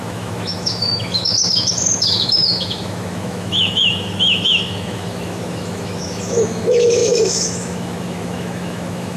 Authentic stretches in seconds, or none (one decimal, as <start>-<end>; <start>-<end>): none